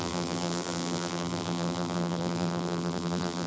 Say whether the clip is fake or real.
fake